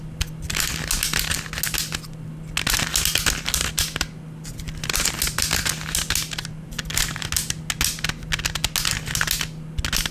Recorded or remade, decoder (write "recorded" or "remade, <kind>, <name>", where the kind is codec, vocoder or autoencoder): recorded